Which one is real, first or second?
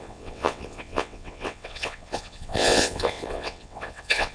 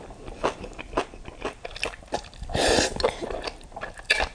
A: second